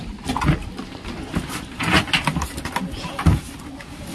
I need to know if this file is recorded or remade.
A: recorded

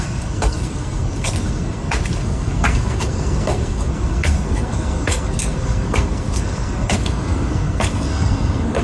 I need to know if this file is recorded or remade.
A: remade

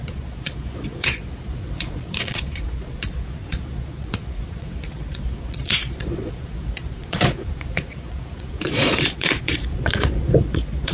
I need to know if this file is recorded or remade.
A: remade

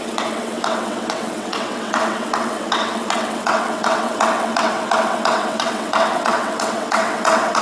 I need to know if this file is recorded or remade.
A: remade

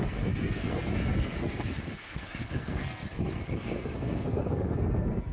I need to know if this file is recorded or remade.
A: remade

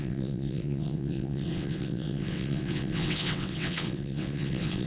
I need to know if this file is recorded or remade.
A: remade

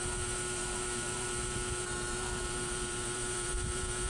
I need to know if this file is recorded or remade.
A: remade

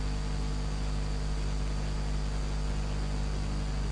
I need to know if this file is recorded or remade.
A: recorded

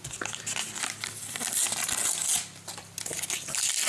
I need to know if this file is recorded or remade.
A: recorded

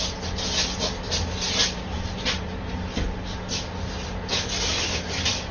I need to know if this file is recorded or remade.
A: recorded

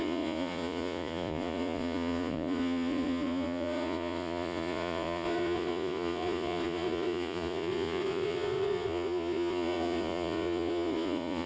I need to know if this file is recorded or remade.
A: remade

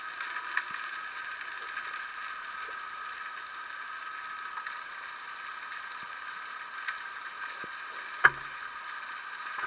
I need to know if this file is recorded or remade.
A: recorded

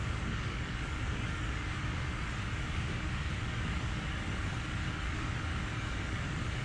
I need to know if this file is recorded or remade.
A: remade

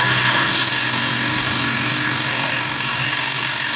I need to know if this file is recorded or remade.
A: remade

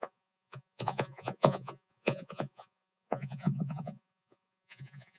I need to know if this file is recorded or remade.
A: remade